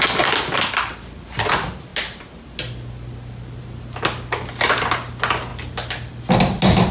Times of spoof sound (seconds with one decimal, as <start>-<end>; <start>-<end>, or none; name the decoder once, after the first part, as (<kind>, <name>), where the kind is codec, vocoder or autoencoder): none